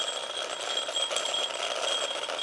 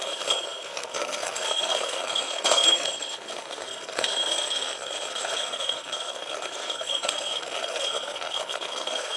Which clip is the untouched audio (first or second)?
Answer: first